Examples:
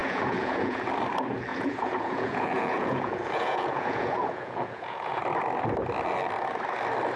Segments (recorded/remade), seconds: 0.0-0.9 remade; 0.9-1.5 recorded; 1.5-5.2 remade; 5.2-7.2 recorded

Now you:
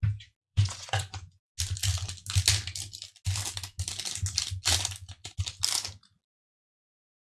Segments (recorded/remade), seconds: 0.0-0.4 recorded; 0.4-1.5 remade; 1.5-7.3 recorded

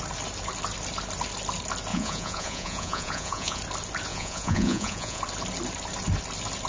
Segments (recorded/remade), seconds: 0.0-1.9 recorded; 1.9-3.6 remade; 3.6-4.1 recorded; 4.1-5.2 remade; 5.2-6.7 recorded

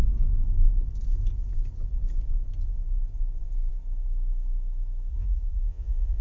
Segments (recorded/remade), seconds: 0.0-5.1 recorded; 5.1-6.2 remade

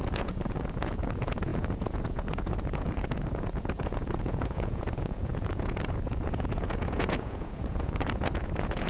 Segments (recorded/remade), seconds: 0.0-8.9 remade